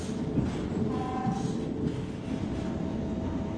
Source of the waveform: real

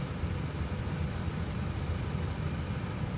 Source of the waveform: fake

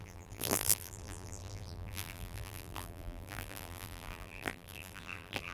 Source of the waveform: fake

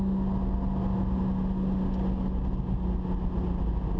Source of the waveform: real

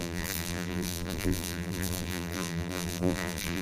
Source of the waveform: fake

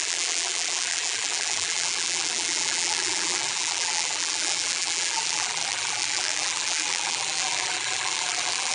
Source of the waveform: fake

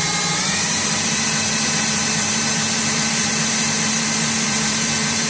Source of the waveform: fake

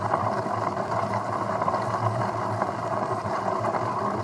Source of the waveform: real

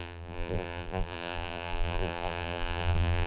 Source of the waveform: fake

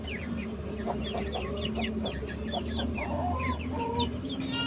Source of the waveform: fake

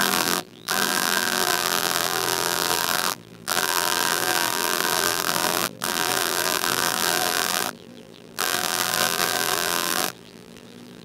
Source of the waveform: fake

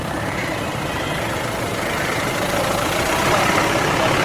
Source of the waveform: fake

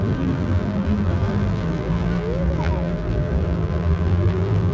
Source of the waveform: fake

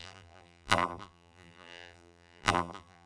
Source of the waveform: fake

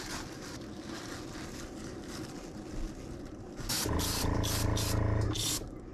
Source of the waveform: fake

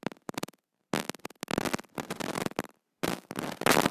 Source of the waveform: real